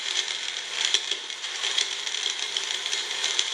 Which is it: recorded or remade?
remade